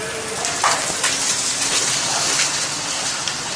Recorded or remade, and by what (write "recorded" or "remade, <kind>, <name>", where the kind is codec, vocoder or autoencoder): recorded